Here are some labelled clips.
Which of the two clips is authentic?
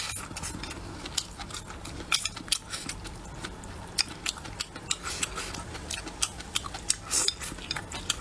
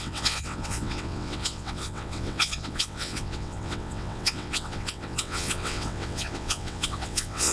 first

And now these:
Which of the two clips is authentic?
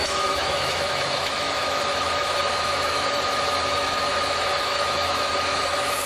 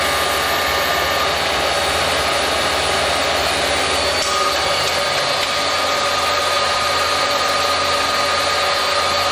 second